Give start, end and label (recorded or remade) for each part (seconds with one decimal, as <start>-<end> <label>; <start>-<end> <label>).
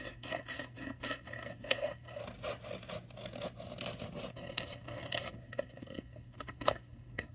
0.0-2.2 remade; 2.2-4.3 recorded; 4.3-7.3 remade